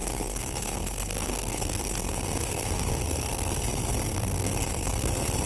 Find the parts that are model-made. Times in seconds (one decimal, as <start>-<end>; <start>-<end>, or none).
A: 0.0-3.3; 4.1-5.1